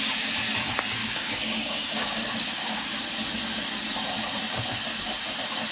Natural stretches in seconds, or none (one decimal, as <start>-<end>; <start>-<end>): 0.0-1.0; 3.0-5.7